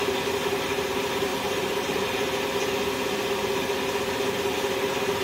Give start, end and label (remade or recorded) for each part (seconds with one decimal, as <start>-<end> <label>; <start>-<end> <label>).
0.0-1.3 recorded; 1.3-2.4 remade; 2.4-5.2 recorded